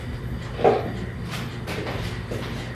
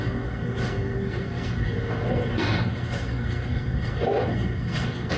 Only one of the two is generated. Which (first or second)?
second